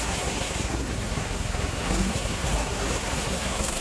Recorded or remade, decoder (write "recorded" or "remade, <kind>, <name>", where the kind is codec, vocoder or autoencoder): remade, codec, SNAC